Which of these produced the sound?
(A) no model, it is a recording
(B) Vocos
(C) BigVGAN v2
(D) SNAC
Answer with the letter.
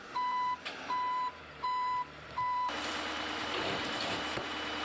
C